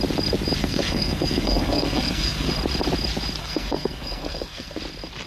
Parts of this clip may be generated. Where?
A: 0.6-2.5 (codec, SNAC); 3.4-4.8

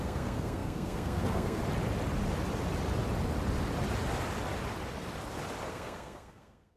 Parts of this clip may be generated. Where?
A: 0.0-1.6 (codec, SNAC); 5.7-6.8

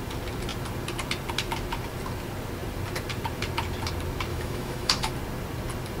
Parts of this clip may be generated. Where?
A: 4.3-5.1 (autoencoder, DAC-VAE)

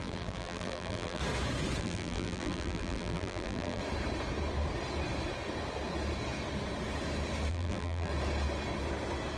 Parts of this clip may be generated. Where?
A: 0.0-1.2 (vocoder, BigVGAN v2); 1.8-3.8; 7.5-8.1

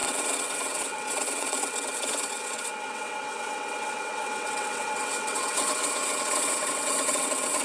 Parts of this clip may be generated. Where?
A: 0.0-7.6 (vocoder, WaveNeXt)

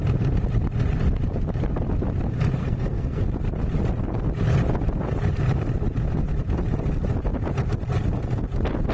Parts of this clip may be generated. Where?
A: 2.6-3.2 (codec, SNAC)